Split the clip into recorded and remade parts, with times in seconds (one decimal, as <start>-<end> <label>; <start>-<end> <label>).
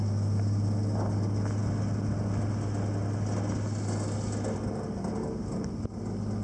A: 0.0-6.4 recorded